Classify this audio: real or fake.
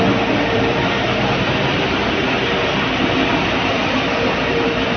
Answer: fake